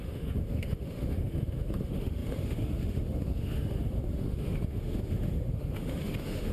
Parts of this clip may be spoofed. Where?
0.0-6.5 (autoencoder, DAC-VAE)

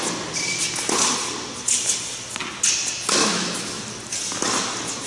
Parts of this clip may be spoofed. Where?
3.2-3.8 (autoencoder, DAC-VAE)